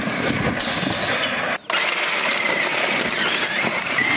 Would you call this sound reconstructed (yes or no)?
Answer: no